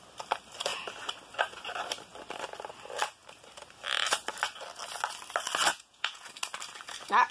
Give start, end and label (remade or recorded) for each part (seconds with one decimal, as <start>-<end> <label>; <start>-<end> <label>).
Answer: 0.0-5.7 recorded; 5.7-6.3 remade; 6.3-7.3 recorded